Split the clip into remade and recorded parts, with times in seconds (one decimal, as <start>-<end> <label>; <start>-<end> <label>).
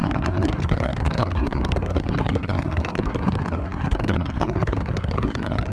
0.0-5.7 remade